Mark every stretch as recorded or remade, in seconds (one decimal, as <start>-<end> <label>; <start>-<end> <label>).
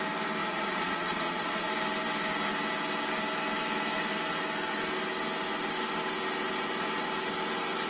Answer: 0.0-0.4 recorded; 0.4-1.7 remade; 1.7-7.9 recorded